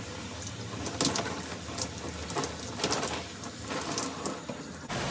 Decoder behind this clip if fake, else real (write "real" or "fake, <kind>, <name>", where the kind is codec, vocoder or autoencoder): real